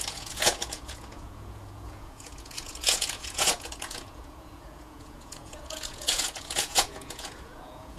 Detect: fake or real fake